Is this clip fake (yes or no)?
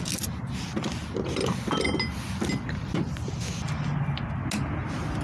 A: no